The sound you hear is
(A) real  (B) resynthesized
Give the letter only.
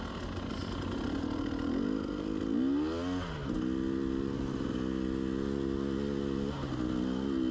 A